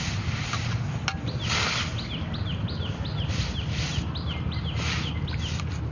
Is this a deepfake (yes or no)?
no